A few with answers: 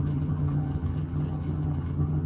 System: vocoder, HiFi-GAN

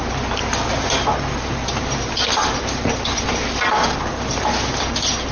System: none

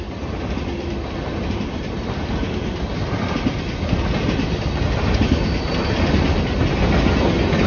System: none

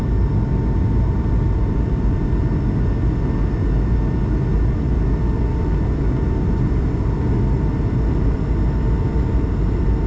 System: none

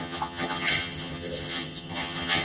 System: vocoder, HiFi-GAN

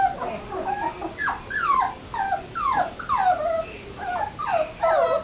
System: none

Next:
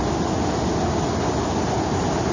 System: none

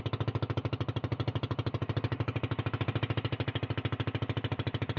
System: none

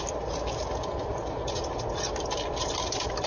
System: none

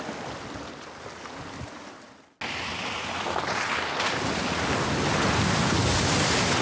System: none